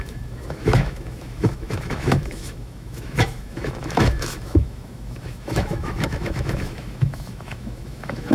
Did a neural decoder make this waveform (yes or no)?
yes